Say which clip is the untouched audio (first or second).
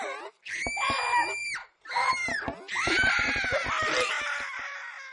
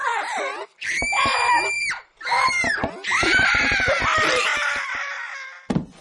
first